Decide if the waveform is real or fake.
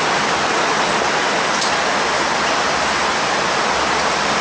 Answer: real